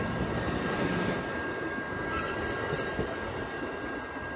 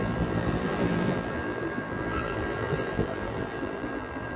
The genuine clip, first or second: first